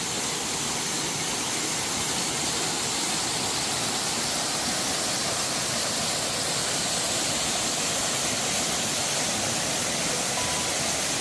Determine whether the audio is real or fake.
real